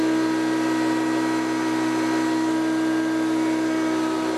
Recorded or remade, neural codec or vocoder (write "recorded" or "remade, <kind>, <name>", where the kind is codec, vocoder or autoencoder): recorded